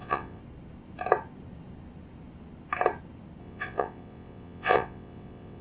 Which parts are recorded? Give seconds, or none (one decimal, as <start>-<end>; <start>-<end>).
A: 0.4-3.4